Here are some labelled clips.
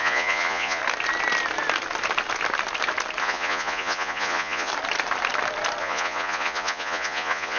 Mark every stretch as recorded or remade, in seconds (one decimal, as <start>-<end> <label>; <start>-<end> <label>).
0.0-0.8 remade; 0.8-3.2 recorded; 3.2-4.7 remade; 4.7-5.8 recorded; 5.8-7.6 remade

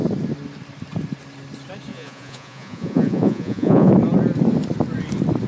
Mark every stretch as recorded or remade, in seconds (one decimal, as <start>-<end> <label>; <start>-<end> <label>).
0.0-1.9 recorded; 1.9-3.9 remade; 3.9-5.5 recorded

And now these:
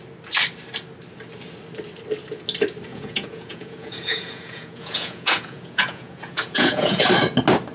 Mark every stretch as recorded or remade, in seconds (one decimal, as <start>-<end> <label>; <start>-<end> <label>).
0.0-2.9 recorded; 2.9-7.1 remade; 7.1-7.7 recorded